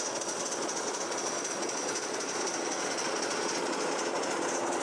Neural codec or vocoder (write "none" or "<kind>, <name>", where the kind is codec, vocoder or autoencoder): vocoder, Vocos